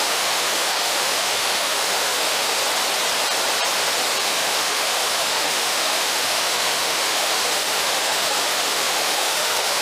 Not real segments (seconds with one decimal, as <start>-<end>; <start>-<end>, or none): 0.0-2.6; 4.2-9.8